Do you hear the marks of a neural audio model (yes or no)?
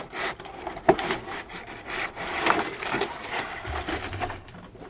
no